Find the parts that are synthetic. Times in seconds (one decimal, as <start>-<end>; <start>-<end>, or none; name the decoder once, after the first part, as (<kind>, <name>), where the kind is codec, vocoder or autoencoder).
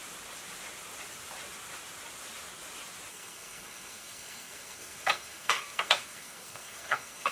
3.1-7.3 (codec, SNAC)